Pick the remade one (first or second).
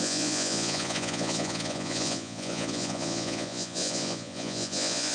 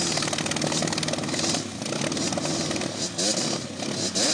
first